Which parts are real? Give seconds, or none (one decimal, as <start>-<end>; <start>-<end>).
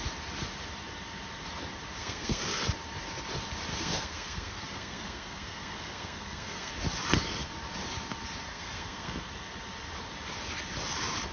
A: 0.0-2.0; 2.6-3.7; 6.7-8.5; 9.3-11.3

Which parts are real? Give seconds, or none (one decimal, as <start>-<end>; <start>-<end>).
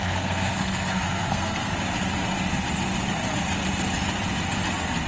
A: 1.7-5.1